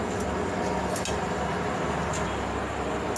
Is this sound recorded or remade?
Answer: recorded